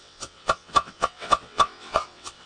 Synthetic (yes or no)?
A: yes